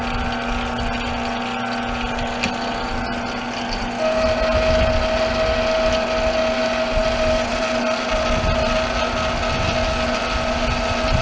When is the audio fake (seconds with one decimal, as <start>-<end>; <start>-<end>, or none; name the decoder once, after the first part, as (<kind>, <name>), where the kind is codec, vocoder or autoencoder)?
none